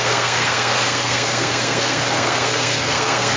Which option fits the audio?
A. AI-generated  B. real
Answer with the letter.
A